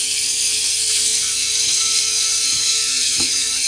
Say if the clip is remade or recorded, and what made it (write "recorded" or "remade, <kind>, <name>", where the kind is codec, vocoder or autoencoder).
remade, codec, SNAC